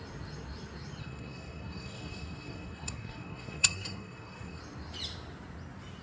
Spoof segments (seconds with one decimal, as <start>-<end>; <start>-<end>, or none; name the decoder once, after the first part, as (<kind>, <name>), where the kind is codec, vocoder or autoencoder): 1.0-4.6 (codec, SNAC)